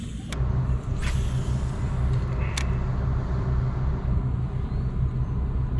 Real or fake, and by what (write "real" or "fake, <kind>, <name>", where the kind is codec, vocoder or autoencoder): real